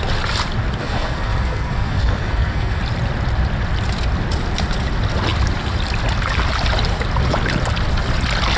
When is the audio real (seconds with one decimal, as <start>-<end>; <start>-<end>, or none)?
0.0-0.8; 2.8-8.6